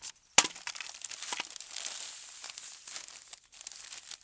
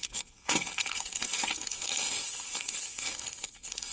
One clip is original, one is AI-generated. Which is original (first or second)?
first